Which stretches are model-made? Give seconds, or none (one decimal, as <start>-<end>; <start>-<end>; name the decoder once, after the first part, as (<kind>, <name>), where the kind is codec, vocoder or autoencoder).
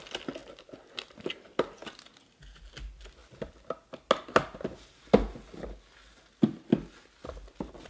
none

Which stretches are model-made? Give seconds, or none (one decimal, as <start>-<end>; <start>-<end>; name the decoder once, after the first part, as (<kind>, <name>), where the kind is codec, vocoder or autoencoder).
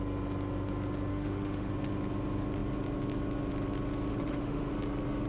1.1-1.7 (autoencoder, DAC-VAE); 4.1-4.7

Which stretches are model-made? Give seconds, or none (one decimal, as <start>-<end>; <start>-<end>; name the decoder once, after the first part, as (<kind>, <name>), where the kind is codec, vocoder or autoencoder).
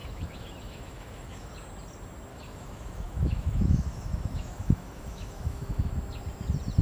0.0-1.5 (autoencoder, DAC-VAE); 2.3-5.9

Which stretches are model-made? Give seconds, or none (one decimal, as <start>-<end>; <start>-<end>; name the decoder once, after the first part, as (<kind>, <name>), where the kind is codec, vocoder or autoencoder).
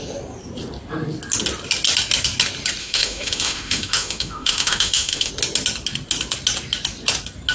2.8-5.3 (autoencoder, DAC-VAE)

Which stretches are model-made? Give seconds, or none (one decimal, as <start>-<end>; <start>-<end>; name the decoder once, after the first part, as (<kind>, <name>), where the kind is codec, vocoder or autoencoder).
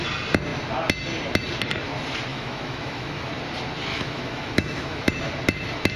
2.3-3.3 (autoencoder, DAC-VAE); 3.9-5.1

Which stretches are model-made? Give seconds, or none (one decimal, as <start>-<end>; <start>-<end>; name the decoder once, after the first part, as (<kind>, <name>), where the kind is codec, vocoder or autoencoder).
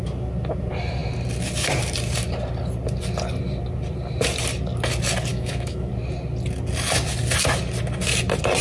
5.3-5.9 (autoencoder, DAC-VAE)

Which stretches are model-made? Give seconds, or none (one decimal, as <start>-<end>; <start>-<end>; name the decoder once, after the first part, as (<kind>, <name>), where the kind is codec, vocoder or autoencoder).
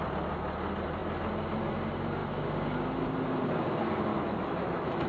4.1-5.1 (autoencoder, DAC-VAE)